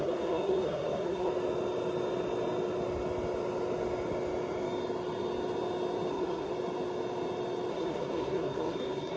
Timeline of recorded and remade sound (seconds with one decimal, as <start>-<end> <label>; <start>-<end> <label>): 0.0-1.3 remade; 1.3-6.1 recorded; 6.1-6.5 remade; 6.5-7.7 recorded; 7.7-9.2 remade